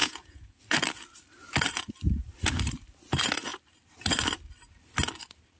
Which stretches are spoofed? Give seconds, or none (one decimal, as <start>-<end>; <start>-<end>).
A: 0.0-0.6